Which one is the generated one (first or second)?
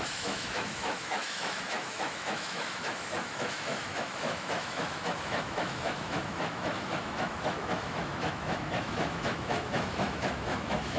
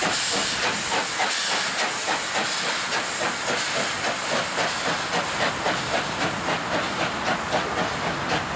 first